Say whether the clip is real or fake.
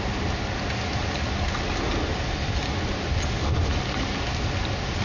real